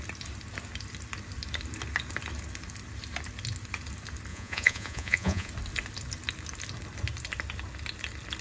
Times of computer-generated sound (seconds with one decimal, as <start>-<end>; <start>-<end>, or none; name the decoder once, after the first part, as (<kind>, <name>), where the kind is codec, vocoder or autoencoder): 4.3-5.5 (vocoder, Vocos)

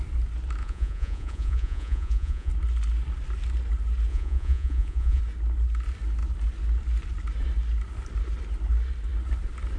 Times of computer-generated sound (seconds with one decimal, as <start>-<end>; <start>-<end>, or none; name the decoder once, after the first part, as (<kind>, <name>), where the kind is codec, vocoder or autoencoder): 0.6-2.5 (vocoder, Vocos); 4.1-5.2

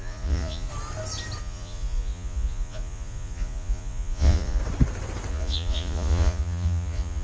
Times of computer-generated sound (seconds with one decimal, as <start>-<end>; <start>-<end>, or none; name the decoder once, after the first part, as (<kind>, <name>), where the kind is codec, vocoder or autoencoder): 0.0-0.7 (vocoder, Vocos); 1.4-4.6; 5.3-7.2

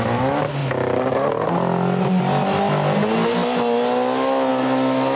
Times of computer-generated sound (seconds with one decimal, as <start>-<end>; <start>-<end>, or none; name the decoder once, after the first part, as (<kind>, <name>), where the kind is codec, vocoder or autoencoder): none

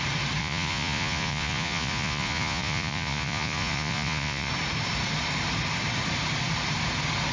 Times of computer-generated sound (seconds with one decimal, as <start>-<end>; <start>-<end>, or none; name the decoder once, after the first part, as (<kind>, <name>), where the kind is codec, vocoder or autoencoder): 0.4-4.5 (vocoder, Vocos)

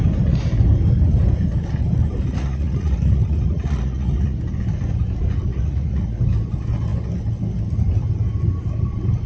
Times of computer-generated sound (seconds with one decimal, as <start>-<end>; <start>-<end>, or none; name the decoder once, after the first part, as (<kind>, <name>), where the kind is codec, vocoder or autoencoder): 2.3-4.4 (vocoder, Vocos); 5.5-6.2